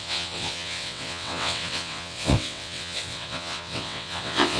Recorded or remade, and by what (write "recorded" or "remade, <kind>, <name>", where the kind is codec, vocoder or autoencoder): remade, vocoder, WaveNeXt